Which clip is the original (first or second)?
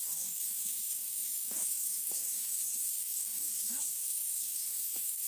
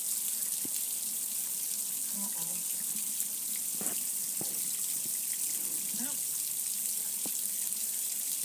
second